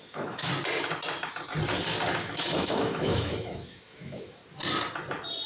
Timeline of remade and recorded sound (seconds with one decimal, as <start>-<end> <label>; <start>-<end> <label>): 0.0-0.5 remade; 0.5-2.2 recorded; 2.2-4.4 remade; 4.4-5.5 recorded